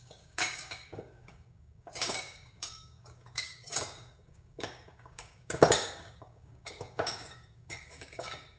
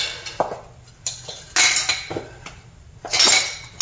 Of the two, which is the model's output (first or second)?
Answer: first